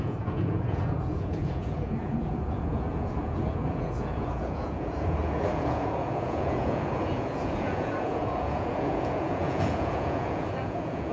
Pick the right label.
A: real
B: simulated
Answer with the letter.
B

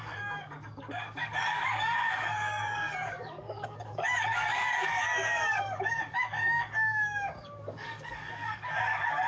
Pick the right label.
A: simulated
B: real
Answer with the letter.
A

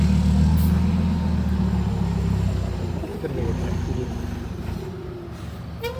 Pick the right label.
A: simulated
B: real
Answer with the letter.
B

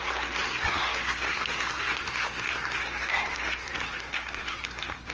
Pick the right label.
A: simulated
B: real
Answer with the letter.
A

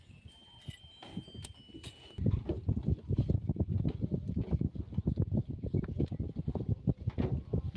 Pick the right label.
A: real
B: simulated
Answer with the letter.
A